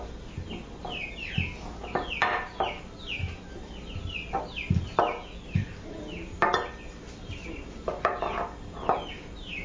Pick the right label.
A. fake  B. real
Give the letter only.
B